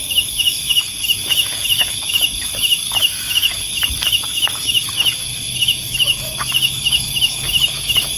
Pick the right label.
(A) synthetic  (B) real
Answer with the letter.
A